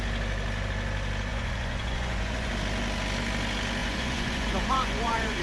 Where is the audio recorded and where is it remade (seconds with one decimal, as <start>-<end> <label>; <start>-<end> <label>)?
0.0-1.3 recorded; 1.3-2.5 remade; 2.5-3.8 recorded; 3.8-5.4 remade